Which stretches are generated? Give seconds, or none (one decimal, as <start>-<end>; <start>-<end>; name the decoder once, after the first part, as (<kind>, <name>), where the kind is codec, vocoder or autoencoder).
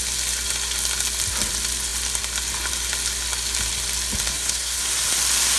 4.3-4.8 (codec, SNAC)